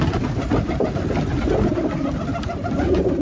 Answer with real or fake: real